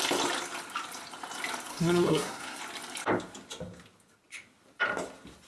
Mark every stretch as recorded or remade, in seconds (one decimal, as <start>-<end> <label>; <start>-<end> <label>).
0.0-1.7 recorded; 1.7-2.6 remade; 2.6-5.5 recorded